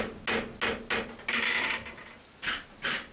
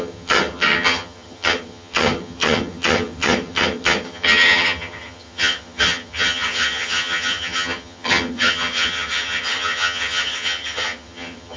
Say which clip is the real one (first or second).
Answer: first